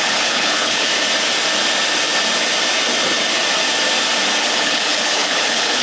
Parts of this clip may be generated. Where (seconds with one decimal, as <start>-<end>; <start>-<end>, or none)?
0.0-0.9; 4.4-5.8